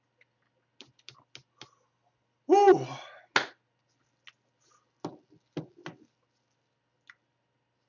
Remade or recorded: recorded